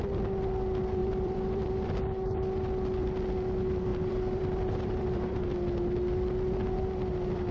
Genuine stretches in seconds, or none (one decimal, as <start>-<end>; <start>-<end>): 0.0-1.0; 1.7-3.9; 5.4-7.5